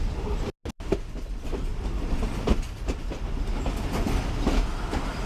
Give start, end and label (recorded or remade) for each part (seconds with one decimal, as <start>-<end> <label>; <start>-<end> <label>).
0.0-5.3 recorded